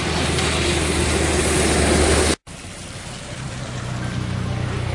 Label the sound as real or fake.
real